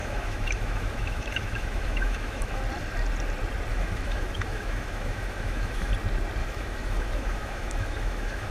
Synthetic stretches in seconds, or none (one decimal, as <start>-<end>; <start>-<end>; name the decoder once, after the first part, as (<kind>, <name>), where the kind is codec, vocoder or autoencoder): 0.0-2.6 (autoencoder, DAC-VAE); 3.7-5.9; 6.4-8.5